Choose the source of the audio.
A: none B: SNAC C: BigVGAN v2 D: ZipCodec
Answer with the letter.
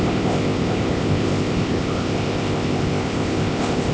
D